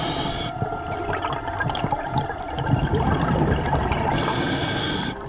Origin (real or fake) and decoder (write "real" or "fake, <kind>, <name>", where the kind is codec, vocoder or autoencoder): real